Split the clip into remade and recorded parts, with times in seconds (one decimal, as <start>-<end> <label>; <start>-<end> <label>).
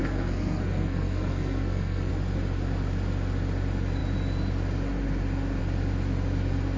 0.0-2.1 remade; 2.1-6.8 recorded